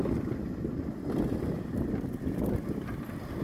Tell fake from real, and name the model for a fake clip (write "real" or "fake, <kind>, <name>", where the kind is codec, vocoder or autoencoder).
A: real